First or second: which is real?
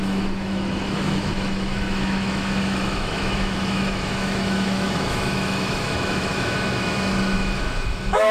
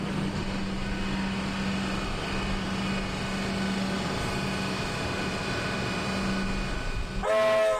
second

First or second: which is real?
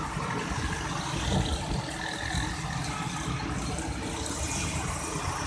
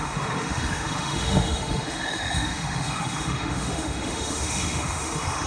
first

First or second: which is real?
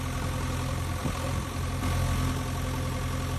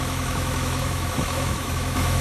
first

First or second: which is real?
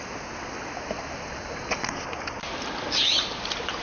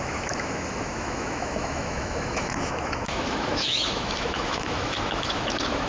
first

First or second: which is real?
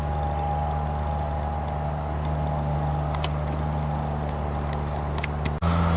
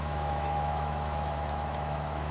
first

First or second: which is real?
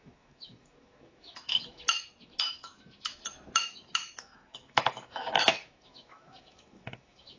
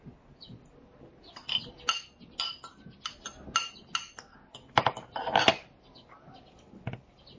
second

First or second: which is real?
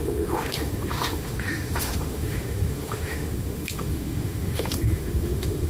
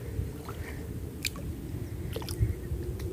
second